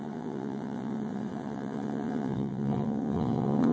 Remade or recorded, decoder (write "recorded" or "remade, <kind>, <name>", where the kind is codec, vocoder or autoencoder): remade, vocoder, WaveNeXt